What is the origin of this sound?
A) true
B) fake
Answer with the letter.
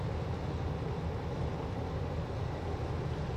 A